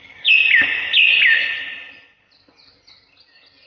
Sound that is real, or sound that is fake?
real